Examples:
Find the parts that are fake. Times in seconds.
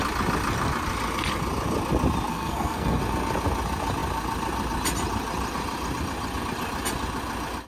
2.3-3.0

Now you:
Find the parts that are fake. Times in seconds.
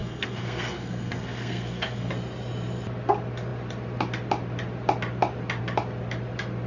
0.0-2.1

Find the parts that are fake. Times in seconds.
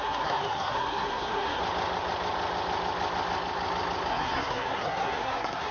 0.0-1.6; 4.1-5.7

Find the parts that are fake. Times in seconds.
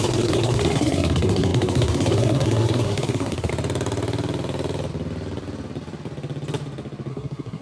0.0-3.5; 7.1-7.6